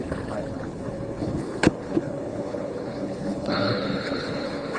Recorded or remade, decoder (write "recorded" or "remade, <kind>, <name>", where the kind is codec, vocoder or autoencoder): remade, codec, HILCodec